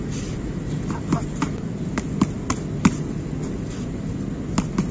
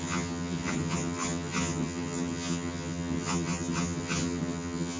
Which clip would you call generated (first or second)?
second